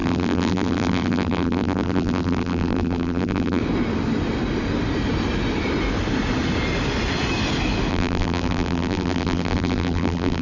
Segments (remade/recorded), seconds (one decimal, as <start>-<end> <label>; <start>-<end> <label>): 0.0-3.6 remade; 3.6-7.9 recorded; 7.9-10.4 remade